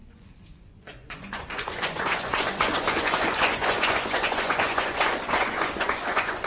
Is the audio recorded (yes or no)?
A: no